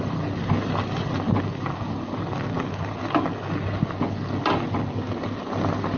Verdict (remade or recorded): recorded